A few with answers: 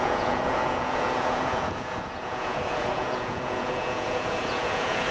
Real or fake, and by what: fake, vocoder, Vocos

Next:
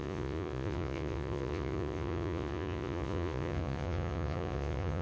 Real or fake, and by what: fake, vocoder, Vocos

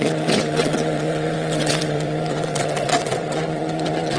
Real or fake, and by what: fake, vocoder, WaveNeXt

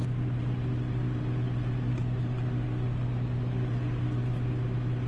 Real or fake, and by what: real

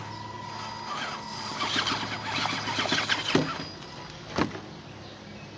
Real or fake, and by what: real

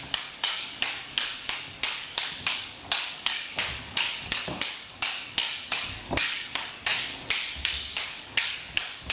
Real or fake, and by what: fake, codec, DAC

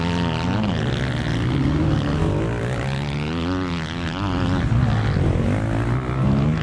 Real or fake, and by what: real